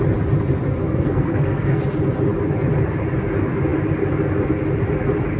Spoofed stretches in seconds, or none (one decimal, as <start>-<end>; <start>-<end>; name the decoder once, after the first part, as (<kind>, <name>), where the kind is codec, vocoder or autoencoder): 0.8-1.8 (codec, SNAC)